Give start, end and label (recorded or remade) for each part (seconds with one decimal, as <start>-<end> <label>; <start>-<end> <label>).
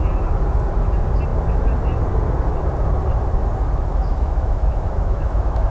0.0-3.9 recorded; 3.9-5.7 remade